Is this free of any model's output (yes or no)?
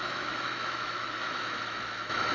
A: no